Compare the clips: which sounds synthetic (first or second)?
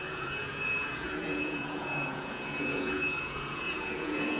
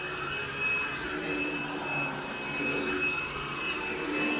first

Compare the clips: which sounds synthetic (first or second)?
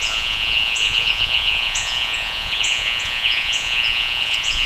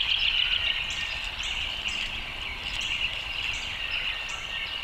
first